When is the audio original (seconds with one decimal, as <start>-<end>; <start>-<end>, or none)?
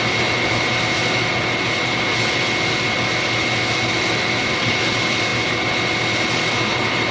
0.0-7.1